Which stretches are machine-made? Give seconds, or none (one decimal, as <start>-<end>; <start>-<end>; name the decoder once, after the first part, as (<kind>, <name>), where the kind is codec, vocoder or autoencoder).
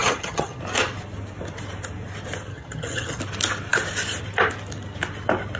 0.0-0.6 (vocoder, HiFi-GAN); 2.5-3.2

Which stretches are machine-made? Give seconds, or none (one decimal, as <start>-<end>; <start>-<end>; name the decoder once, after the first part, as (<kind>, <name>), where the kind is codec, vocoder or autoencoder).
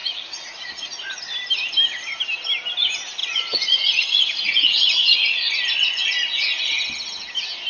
0.0-0.8 (vocoder, Vocos); 3.2-5.5